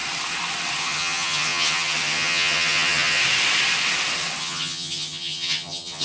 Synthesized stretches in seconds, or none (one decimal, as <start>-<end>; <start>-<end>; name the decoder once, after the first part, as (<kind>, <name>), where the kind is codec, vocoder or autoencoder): 0.8-3.2 (vocoder, HiFi-GAN); 4.4-6.0